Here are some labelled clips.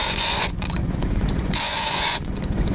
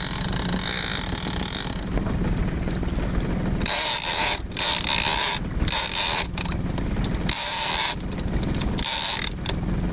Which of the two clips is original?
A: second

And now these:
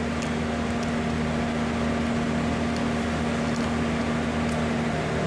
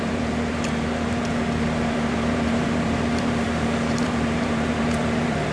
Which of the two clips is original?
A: first